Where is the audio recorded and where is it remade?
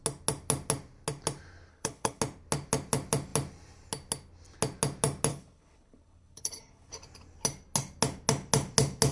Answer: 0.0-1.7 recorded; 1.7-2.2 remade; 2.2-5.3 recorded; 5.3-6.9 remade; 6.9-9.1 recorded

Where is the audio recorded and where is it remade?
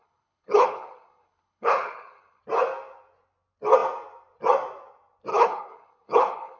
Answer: 0.0-2.4 remade; 2.4-5.3 recorded; 5.3-6.6 remade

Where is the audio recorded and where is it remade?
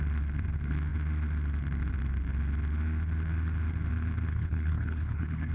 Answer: 0.0-4.3 recorded; 4.3-5.5 remade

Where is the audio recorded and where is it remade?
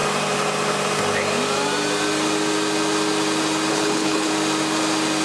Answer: 0.0-3.7 recorded; 3.7-4.3 remade; 4.3-5.2 recorded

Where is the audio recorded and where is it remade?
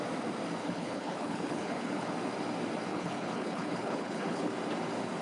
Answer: 0.0-0.6 recorded; 0.6-2.1 remade; 2.1-2.9 recorded; 2.9-4.5 remade; 4.5-5.2 recorded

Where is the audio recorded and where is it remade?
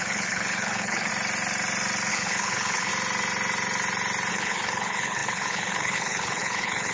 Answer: 0.0-1.1 remade; 1.1-2.1 recorded; 2.1-2.9 remade; 2.9-4.3 recorded; 4.3-6.9 remade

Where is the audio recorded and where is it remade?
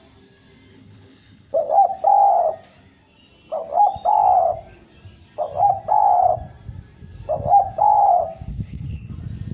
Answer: 0.0-0.7 recorded; 0.7-1.7 remade; 1.7-8.5 recorded; 8.5-9.1 remade; 9.1-9.5 recorded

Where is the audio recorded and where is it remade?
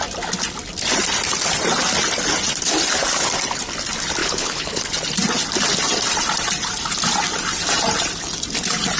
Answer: 0.0-4.2 recorded; 4.2-4.9 remade; 4.9-9.0 recorded